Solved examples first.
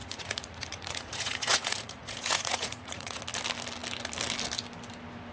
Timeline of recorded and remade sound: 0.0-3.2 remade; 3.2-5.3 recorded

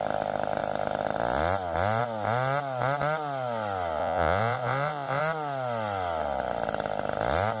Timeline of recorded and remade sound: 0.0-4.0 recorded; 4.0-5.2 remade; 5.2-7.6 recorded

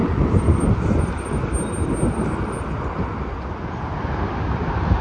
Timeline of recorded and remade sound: 0.0-5.0 recorded

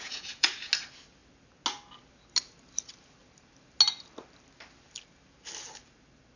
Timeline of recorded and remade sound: 0.0-0.7 remade; 0.7-6.4 recorded

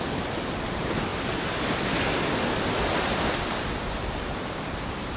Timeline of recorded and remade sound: 0.0-5.2 recorded

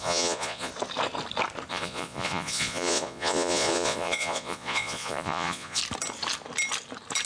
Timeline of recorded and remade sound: 0.0-0.7 remade; 0.7-1.7 recorded; 1.7-5.8 remade; 5.8-7.3 recorded

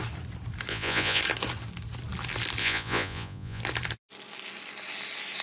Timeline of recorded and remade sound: 0.0-0.7 recorded; 0.7-1.2 remade; 1.2-2.6 recorded; 2.6-3.6 remade; 3.6-5.4 recorded